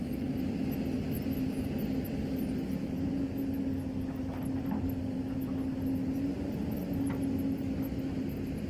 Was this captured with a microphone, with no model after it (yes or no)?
yes